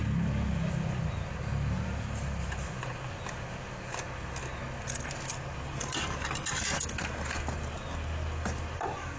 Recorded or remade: recorded